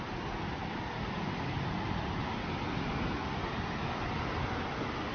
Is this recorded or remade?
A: recorded